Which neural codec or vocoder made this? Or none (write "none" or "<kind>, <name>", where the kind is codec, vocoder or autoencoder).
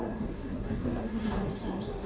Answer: codec, SNAC